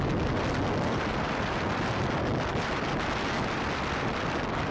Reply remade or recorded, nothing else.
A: recorded